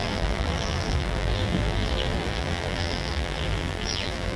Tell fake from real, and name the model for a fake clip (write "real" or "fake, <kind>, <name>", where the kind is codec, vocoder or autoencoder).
fake, vocoder, BigVGAN v2